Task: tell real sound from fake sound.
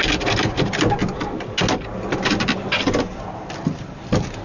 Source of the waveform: real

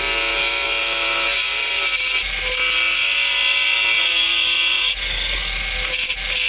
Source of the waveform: real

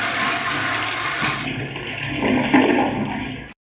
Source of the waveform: real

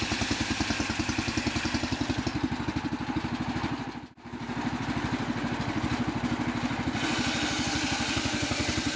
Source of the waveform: real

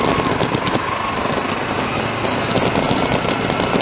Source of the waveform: real